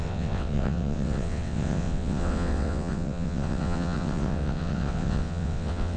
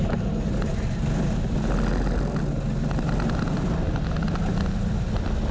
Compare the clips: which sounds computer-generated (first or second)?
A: first